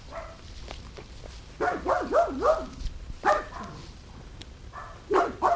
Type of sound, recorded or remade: recorded